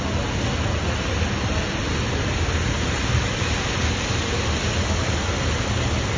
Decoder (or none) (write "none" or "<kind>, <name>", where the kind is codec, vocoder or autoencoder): none